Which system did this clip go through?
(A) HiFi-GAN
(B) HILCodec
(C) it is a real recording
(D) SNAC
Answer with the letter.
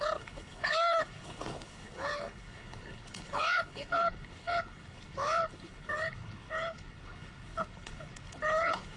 B